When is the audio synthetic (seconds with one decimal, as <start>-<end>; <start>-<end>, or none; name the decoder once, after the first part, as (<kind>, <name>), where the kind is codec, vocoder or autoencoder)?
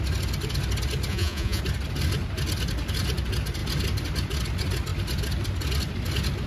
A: 1.1-1.6 (vocoder, Vocos)